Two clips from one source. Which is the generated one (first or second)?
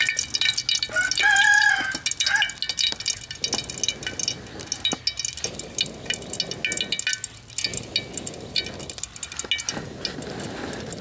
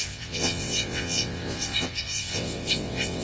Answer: second